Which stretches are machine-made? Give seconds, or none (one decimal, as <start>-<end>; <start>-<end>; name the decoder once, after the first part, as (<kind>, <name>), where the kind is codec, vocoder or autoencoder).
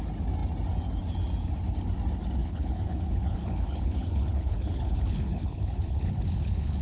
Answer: 2.4-6.8 (codec, HILCodec)